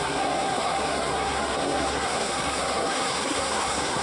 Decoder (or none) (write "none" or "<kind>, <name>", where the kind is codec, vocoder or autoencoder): codec, SNAC